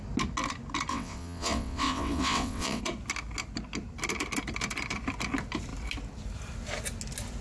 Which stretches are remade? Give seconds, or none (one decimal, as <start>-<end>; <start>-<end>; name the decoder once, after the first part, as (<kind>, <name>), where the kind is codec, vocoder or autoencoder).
0.9-2.8 (vocoder, WaveNeXt)